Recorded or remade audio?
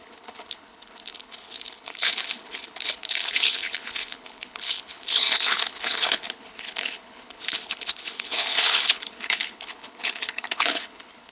remade